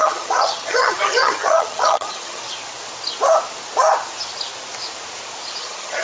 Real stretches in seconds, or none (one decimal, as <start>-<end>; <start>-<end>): 2.4-5.6